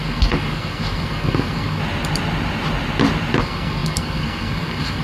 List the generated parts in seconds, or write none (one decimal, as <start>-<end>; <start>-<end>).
0.0-1.8; 3.4-5.0